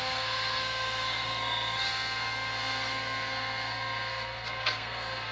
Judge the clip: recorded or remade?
remade